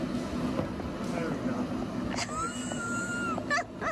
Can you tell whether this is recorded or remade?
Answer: recorded